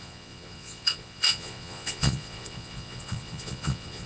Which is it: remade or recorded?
remade